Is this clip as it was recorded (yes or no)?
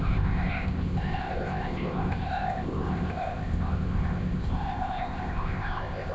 no